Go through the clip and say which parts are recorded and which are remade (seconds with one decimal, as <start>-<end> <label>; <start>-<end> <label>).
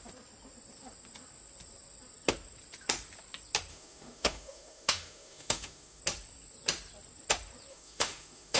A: 0.0-3.7 recorded; 3.7-6.0 remade; 6.0-7.7 recorded; 7.7-8.6 remade